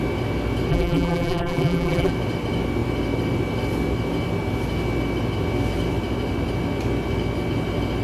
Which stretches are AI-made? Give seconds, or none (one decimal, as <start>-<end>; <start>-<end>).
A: 0.7-2.1